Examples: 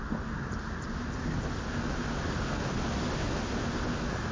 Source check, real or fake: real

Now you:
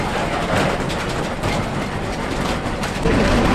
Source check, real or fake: fake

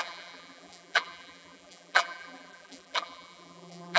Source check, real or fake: fake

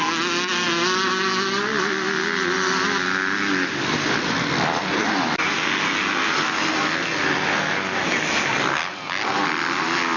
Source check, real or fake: real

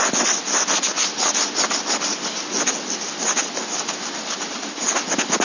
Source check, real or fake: real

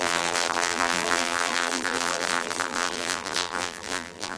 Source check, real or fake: fake